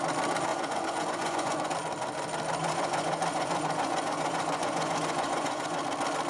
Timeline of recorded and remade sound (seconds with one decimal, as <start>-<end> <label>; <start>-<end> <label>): 0.0-0.5 recorded; 0.5-1.7 remade; 1.7-2.6 recorded; 2.6-5.8 remade; 5.8-6.3 recorded